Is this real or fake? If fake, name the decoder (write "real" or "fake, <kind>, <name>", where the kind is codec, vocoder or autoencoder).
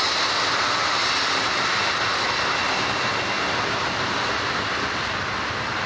real